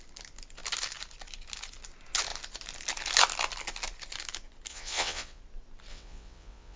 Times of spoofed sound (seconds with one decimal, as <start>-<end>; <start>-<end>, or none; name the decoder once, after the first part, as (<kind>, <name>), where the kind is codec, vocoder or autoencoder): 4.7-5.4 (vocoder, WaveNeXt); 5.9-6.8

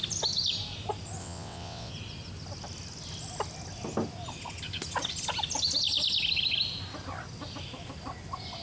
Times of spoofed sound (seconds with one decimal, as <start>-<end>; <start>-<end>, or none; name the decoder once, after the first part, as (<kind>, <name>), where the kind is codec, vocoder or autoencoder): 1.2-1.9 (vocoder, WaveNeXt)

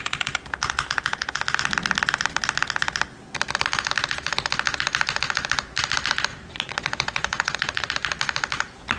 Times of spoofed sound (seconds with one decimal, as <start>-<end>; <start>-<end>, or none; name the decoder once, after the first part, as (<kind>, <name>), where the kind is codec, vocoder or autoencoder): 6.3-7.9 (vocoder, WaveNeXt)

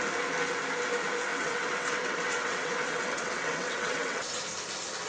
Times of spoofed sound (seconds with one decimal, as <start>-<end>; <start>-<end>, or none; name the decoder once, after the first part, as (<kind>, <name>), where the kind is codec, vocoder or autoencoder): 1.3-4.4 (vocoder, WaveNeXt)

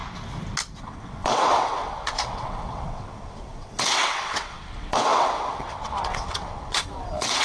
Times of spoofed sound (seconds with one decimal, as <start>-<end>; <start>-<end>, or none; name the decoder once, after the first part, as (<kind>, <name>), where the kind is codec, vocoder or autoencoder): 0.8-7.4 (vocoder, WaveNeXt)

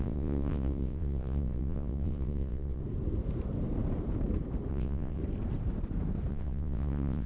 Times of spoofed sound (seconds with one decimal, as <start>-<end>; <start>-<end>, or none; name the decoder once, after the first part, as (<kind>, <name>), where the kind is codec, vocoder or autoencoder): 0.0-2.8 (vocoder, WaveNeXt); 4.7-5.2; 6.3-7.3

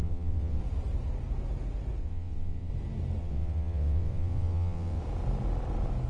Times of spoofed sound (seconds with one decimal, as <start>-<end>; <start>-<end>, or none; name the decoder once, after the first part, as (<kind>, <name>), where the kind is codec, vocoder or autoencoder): 0.0-0.6 (vocoder, WaveNeXt); 2.0-2.7; 3.2-5.0

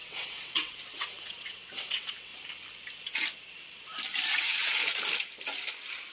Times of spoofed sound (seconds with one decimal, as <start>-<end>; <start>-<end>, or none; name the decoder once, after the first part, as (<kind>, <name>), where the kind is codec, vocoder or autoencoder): 0.0-2.3 (vocoder, WaveNeXt); 4.3-4.8